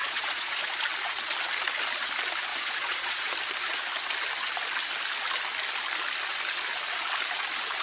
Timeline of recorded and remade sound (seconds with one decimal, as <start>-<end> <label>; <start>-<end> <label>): 0.0-0.6 remade; 0.6-2.5 recorded; 2.5-3.3 remade; 3.3-7.8 recorded